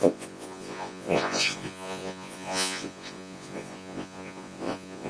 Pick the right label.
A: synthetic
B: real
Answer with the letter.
A